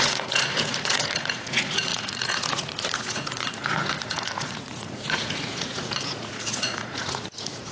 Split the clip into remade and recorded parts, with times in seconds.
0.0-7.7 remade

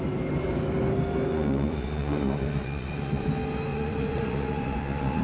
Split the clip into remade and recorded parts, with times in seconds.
0.0-1.3 recorded; 1.3-3.3 remade; 3.3-3.7 recorded; 3.7-5.2 remade

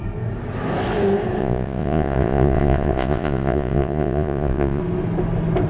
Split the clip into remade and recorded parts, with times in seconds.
0.0-1.4 recorded; 1.4-4.8 remade; 4.8-5.7 recorded